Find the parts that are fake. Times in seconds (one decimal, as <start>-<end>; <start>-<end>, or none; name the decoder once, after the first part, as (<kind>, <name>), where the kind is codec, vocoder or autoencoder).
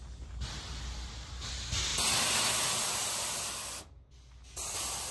none